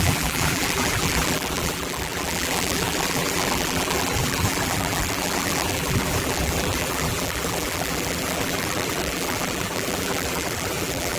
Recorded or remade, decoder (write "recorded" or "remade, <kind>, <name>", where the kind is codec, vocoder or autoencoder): remade, vocoder, BigVGAN v2